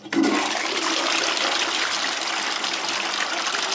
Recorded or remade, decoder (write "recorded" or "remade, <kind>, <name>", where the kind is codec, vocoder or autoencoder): recorded